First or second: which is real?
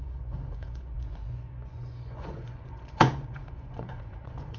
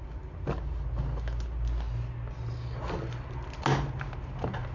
second